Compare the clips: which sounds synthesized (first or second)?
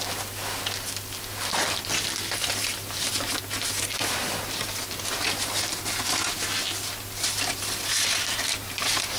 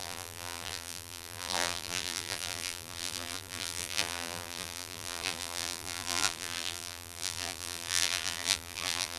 second